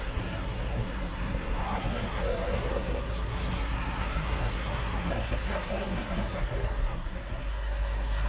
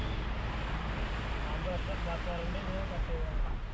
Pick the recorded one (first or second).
second